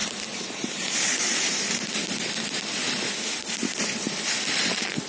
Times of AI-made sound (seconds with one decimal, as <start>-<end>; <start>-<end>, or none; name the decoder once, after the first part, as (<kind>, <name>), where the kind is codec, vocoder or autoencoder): 0.0-1.6 (vocoder, BigVGAN v2)

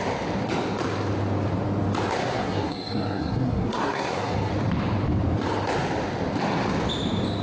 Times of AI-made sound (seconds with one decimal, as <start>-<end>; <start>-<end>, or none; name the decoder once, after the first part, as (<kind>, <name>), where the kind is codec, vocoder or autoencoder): 2.2-4.5 (codec, SNAC)

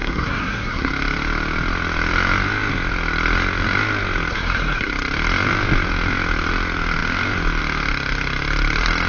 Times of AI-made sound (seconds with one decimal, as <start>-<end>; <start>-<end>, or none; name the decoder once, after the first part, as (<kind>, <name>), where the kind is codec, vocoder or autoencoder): 0.0-0.9 (codec, SNAC); 4.3-4.9

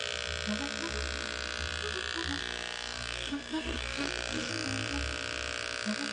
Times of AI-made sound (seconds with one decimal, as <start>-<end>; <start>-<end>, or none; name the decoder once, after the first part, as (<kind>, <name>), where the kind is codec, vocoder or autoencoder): 2.4-4.5 (autoencoder, DAC-VAE)

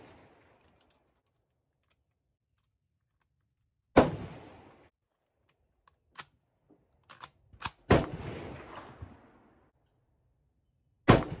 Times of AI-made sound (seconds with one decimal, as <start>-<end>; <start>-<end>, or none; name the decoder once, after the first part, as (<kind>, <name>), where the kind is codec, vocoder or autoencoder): none